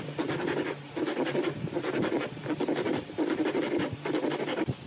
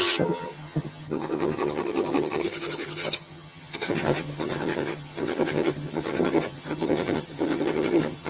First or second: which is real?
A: first